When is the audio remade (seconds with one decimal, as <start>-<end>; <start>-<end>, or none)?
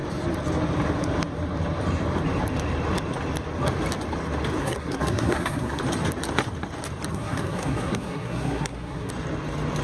4.6-5.8; 7.1-9.1